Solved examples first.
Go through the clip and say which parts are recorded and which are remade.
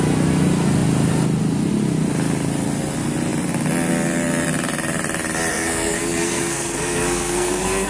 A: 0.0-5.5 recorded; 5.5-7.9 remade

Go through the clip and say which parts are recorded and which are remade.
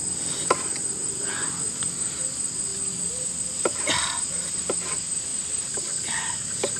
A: 0.0-2.7 recorded; 2.7-4.3 remade; 4.3-5.3 recorded; 5.3-5.8 remade; 5.8-6.8 recorded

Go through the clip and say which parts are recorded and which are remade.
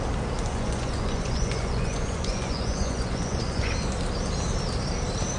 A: 0.0-0.5 recorded; 0.5-3.7 remade; 3.7-5.4 recorded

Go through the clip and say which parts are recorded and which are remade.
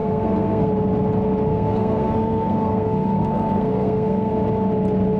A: 0.0-0.7 remade; 0.7-1.5 recorded; 1.5-4.3 remade; 4.3-5.2 recorded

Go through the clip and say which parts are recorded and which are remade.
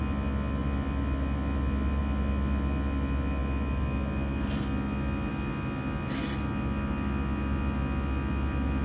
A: 0.0-8.8 recorded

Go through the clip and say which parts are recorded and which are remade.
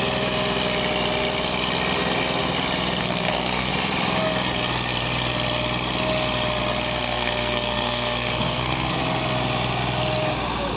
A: 0.0-3.0 recorded; 3.0-3.7 remade; 3.7-7.0 recorded; 7.0-9.0 remade; 9.0-10.8 recorded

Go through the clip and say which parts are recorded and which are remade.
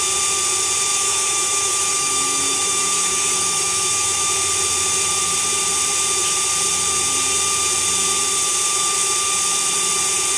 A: 0.0-0.9 recorded; 0.9-4.3 remade; 4.3-10.4 recorded